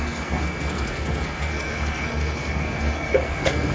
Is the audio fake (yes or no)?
yes